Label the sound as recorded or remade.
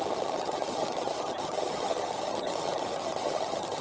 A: remade